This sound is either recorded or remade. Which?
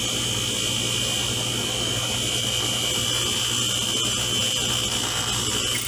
recorded